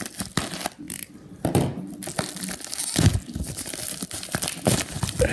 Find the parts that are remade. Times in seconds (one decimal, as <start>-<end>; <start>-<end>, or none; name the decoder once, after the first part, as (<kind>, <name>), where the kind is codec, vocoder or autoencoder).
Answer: none